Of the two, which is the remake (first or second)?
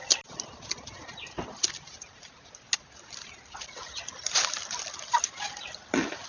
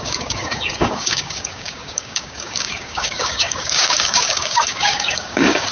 second